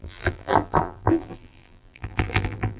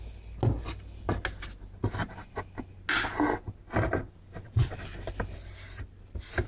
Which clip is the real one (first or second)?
second